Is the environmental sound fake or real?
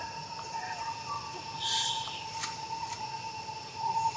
real